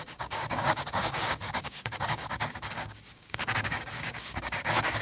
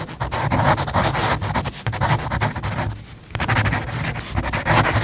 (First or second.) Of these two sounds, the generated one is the first